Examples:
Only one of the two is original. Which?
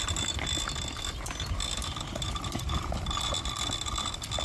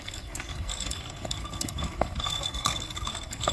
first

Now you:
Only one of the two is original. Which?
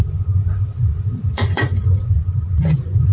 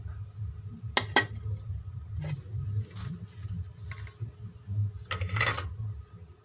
second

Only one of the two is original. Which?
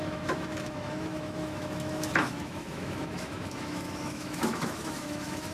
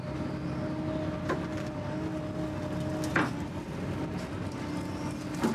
second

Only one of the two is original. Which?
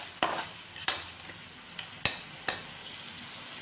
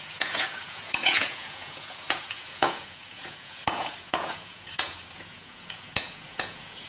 first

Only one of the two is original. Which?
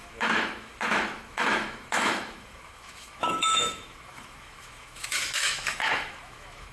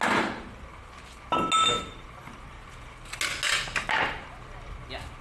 second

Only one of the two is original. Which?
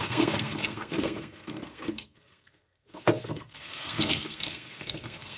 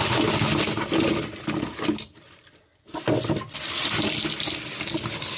second